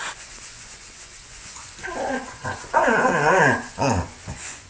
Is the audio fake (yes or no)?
yes